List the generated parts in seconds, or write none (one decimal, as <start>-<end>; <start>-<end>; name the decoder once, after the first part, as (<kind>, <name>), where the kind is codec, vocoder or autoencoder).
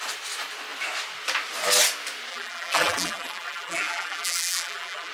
2.3-5.1 (vocoder, BigVGAN v2)